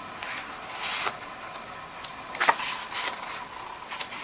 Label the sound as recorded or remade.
recorded